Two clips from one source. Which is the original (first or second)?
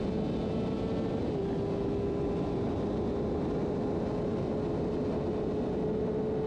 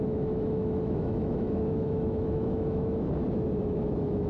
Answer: first